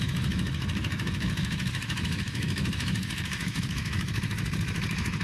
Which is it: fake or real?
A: fake